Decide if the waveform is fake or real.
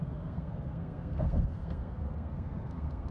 fake